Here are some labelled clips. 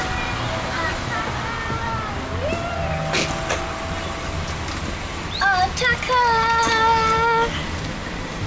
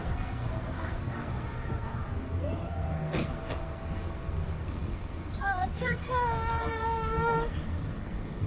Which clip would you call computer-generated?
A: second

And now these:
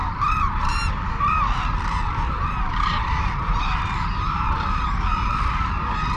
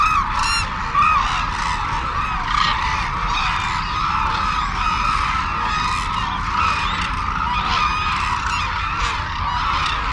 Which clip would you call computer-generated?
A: first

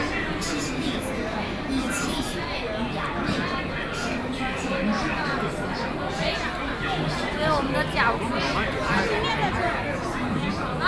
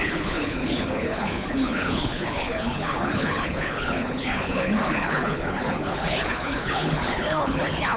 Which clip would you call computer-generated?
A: second